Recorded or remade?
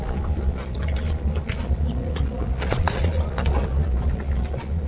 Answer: remade